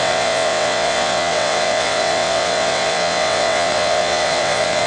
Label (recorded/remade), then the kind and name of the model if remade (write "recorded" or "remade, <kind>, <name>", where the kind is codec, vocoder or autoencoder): remade, vocoder, WaveNeXt